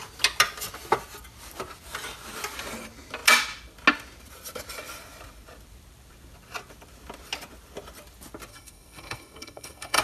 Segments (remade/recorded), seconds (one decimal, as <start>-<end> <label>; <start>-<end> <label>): 0.0-8.5 recorded; 8.5-10.0 remade